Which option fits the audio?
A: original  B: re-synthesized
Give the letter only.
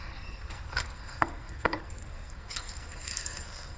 B